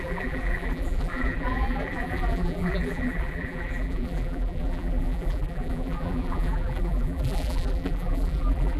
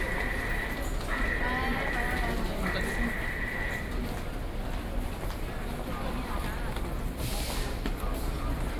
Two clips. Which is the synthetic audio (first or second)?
first